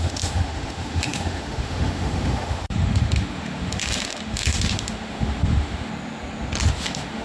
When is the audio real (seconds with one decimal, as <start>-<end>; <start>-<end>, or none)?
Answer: 5.9-6.7